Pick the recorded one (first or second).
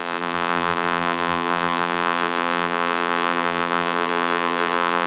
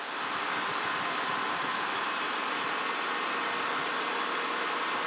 second